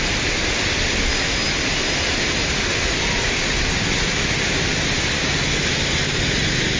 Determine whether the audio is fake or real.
real